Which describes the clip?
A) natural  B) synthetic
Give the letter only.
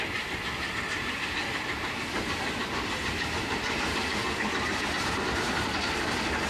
B